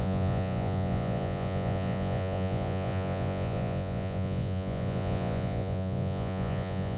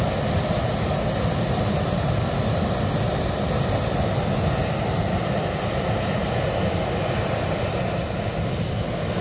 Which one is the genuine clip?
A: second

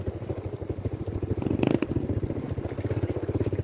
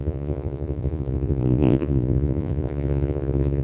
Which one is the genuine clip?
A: first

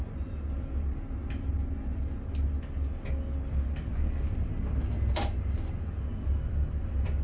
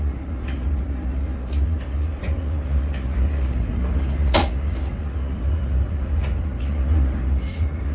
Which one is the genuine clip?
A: first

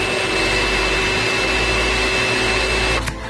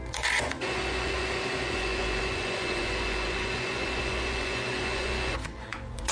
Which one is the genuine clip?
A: first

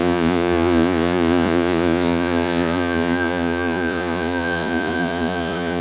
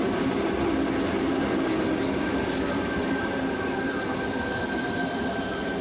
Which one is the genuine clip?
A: second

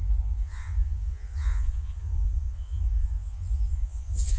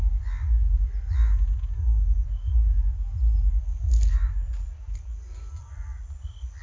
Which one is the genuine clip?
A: second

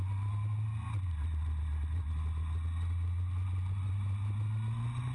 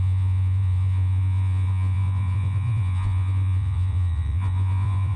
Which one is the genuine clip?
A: first